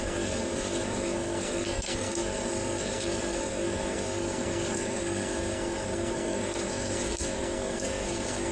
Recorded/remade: remade